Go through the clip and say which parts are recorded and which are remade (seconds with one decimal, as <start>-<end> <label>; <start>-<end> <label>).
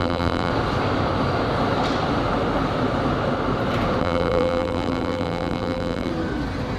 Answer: 0.0-0.5 remade; 0.5-4.0 recorded; 4.0-6.1 remade; 6.1-6.8 recorded